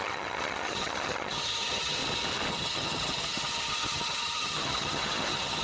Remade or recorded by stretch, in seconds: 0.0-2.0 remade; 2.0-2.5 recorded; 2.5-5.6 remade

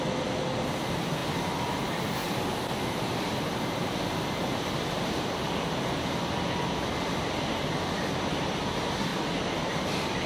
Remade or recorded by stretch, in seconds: 0.0-2.2 recorded; 2.2-4.2 remade; 4.2-9.1 recorded; 9.1-9.8 remade; 9.8-10.3 recorded